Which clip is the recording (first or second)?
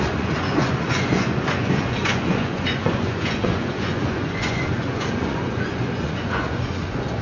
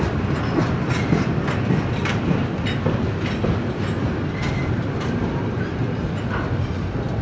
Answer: second